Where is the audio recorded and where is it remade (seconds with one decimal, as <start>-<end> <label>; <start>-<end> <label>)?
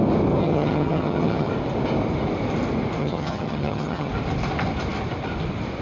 0.0-0.4 recorded; 0.4-1.5 remade; 1.5-3.0 recorded; 3.0-4.1 remade; 4.1-5.8 recorded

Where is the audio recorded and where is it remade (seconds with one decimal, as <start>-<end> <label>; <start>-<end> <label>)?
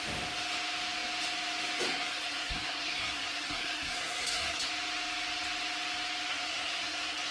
0.0-1.9 recorded; 1.9-4.7 remade; 4.7-6.3 recorded; 6.3-7.3 remade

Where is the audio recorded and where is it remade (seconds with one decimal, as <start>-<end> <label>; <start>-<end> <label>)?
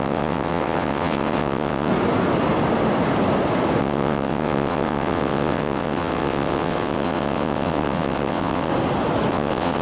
0.0-1.9 remade; 1.9-3.8 recorded; 3.8-8.7 remade; 8.7-9.3 recorded; 9.3-9.8 remade